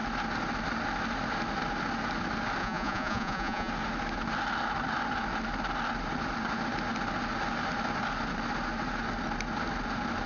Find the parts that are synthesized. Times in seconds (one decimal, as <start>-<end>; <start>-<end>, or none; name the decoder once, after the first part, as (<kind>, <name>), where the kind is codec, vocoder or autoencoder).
2.6-3.7 (vocoder, Vocos)